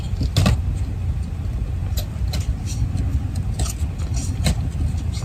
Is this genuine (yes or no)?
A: yes